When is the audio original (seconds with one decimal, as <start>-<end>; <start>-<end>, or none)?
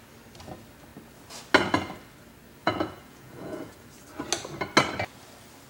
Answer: 0.0-2.6; 3.9-5.7